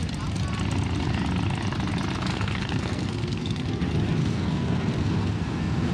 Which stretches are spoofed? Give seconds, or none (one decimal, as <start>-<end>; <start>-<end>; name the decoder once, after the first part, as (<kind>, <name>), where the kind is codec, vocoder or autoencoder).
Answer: 2.3-3.7 (codec, SNAC); 4.2-5.9